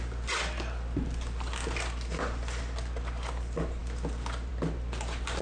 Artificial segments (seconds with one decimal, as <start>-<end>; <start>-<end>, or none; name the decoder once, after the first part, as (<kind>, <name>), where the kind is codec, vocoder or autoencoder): none